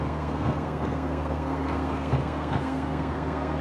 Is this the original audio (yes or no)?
no